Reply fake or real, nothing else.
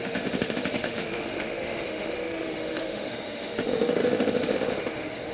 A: fake